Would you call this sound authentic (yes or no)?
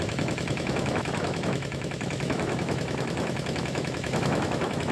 no